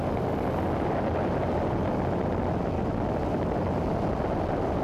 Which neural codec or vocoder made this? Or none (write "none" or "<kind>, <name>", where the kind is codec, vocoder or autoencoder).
none